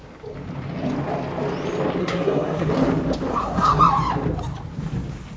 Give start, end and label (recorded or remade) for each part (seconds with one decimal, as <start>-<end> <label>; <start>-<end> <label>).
0.0-2.0 recorded; 2.0-2.7 remade; 2.7-3.3 recorded; 3.3-3.8 remade; 3.8-5.4 recorded